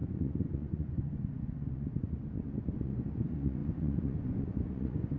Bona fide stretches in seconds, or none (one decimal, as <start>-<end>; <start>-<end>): none